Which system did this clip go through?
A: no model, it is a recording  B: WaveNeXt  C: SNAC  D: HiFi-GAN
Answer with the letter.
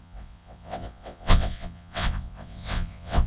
B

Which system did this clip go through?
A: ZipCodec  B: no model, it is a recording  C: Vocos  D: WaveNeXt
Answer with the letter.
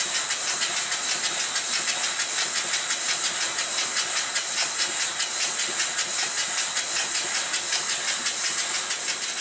B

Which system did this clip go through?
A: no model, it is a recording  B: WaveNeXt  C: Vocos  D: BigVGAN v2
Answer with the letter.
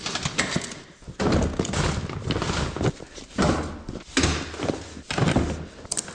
A